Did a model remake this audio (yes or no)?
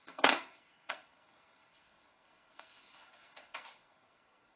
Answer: yes